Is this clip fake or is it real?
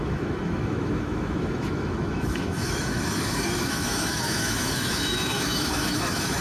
fake